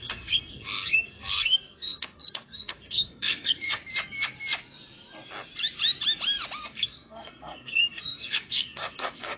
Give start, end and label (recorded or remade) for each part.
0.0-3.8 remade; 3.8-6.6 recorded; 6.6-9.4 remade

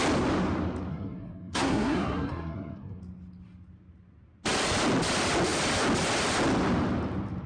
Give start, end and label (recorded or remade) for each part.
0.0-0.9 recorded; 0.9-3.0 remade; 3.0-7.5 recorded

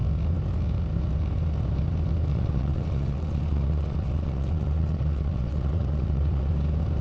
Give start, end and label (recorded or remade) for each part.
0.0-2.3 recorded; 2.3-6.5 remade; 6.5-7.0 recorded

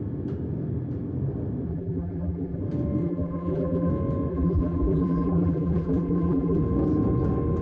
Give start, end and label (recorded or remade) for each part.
0.0-1.7 recorded; 1.7-2.6 remade; 2.6-3.0 recorded; 3.0-3.9 remade; 3.9-4.3 recorded; 4.3-6.6 remade; 6.6-7.6 recorded

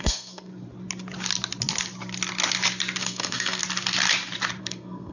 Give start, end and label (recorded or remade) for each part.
0.0-0.5 remade; 0.5-3.0 recorded; 3.0-3.6 remade; 3.6-4.6 recorded; 4.6-5.1 remade

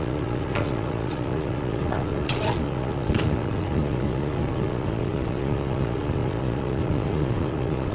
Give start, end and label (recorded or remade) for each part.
0.0-7.9 remade

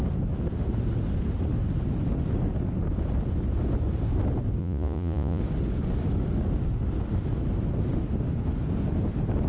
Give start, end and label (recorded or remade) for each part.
0.0-4.6 recorded; 4.6-5.4 remade; 5.4-9.5 recorded

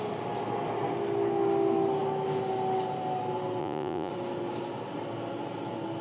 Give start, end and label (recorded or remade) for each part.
0.0-3.6 recorded; 3.6-4.1 remade; 4.1-6.0 recorded